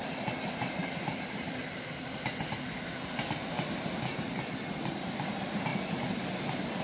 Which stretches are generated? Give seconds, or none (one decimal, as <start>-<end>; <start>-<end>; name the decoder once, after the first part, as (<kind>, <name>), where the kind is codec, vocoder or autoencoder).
none